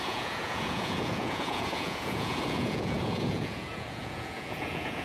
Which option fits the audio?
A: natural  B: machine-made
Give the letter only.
B